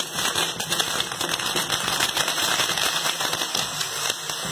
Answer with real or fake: real